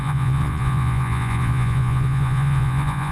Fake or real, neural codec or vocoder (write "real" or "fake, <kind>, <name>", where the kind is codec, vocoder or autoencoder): fake, vocoder, Vocos